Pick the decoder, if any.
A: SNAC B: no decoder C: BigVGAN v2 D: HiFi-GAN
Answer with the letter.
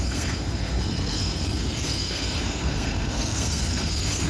A